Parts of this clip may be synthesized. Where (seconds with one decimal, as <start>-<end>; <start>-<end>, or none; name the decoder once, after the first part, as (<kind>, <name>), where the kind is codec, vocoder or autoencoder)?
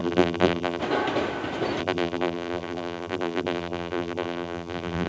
0.0-0.8 (vocoder, BigVGAN v2); 1.8-5.1